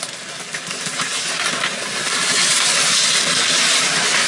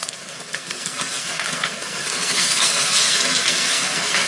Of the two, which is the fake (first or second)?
second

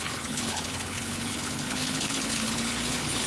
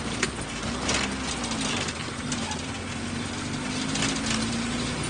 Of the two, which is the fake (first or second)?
first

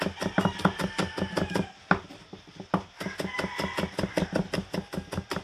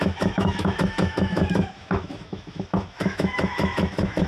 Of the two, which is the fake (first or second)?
second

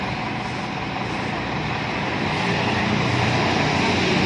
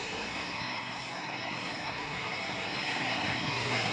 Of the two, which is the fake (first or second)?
second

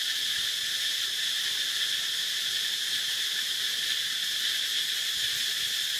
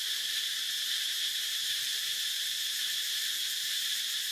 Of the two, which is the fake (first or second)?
second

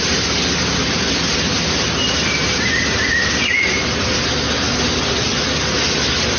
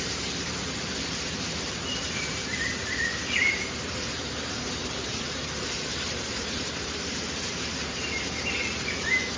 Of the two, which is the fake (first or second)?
second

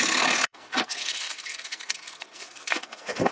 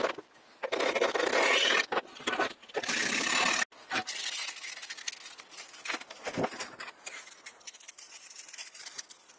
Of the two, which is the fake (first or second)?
first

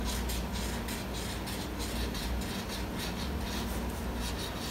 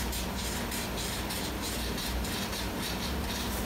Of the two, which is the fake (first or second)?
second